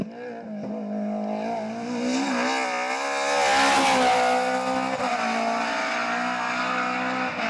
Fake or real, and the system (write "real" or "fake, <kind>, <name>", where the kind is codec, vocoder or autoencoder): real